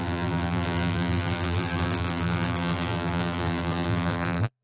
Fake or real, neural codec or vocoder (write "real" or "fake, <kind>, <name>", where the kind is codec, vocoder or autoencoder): fake, vocoder, BigVGAN v2